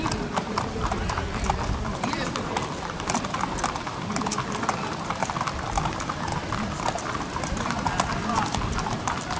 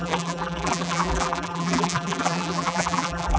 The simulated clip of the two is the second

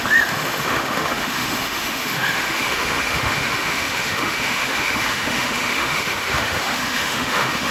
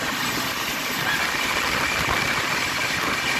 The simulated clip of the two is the first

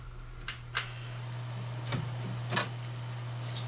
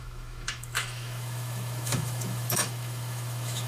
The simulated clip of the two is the second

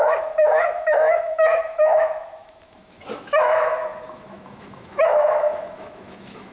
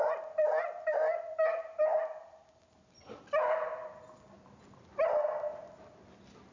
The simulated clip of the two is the first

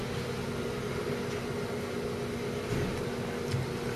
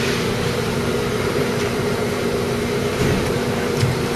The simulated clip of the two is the second